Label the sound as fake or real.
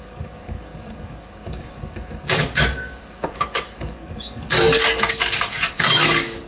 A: fake